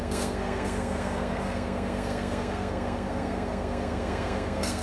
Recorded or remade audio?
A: remade